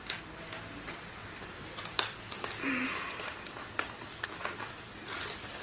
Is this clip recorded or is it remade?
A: recorded